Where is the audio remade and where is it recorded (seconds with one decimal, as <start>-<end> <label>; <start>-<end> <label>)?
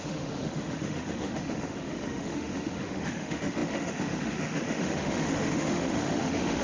0.0-6.6 remade